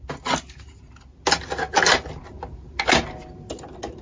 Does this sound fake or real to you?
real